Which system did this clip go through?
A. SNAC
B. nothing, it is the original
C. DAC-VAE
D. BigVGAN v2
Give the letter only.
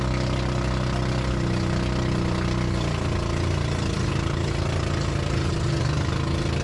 B